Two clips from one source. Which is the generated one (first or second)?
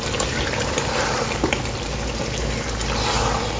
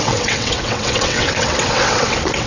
second